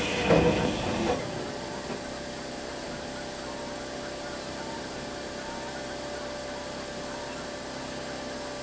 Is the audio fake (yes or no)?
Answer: no